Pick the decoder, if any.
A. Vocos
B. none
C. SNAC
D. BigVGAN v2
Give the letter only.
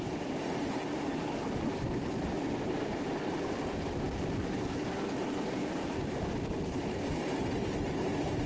D